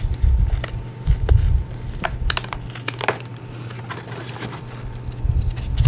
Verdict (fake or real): real